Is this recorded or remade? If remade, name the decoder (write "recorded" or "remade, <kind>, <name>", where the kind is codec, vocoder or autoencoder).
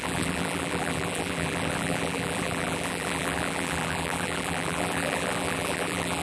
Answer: remade, vocoder, BigVGAN v2